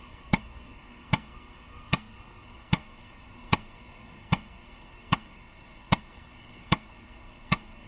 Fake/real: fake